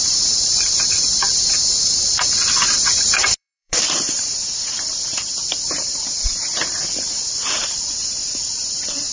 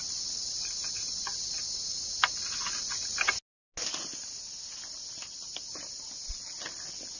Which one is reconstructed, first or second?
first